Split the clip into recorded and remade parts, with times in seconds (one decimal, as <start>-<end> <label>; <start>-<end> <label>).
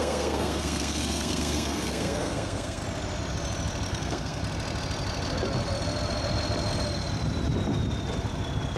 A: 0.0-2.8 remade; 2.8-3.9 recorded; 3.9-4.4 remade; 4.4-8.8 recorded